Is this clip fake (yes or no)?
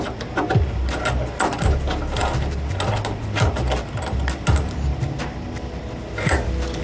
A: no